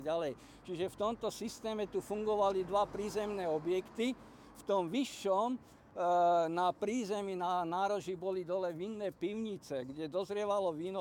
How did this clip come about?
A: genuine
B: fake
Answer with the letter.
B